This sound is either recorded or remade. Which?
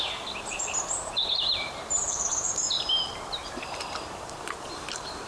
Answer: remade